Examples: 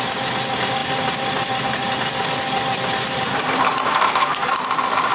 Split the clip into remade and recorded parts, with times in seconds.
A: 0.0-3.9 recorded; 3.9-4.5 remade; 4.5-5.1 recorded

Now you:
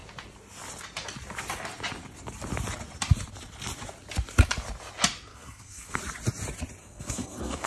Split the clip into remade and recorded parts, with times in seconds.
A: 0.0-5.3 recorded; 5.3-6.0 remade; 6.0-6.8 recorded; 6.8-7.7 remade

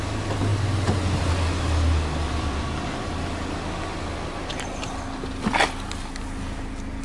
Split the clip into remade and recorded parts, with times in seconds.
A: 0.0-7.0 recorded

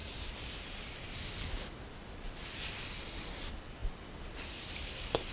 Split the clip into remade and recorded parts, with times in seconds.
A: 0.0-5.3 recorded

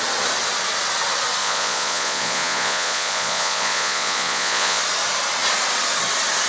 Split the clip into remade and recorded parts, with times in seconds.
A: 0.0-1.4 recorded; 1.4-4.8 remade; 4.8-6.5 recorded

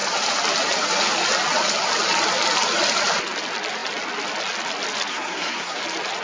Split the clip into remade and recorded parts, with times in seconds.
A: 0.0-5.1 recorded; 5.1-5.8 remade; 5.8-6.2 recorded

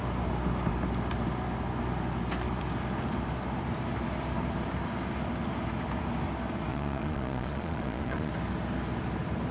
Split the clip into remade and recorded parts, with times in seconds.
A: 0.0-6.7 recorded; 6.7-8.3 remade; 8.3-9.5 recorded